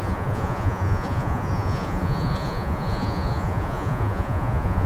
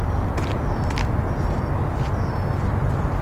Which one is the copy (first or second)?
first